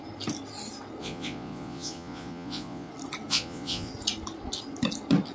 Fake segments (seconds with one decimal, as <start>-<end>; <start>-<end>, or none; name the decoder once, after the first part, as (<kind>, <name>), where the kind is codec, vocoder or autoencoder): 1.0-2.9 (vocoder, Vocos); 3.3-3.9